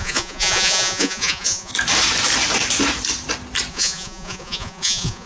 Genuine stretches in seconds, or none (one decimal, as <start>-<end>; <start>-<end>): 1.7-3.7